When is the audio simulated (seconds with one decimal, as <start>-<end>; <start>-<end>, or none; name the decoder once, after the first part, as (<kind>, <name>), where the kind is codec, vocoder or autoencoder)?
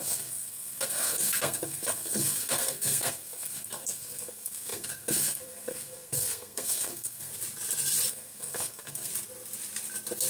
0.0-7.3 (codec, SNAC); 8.1-9.1